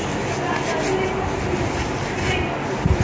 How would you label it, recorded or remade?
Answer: recorded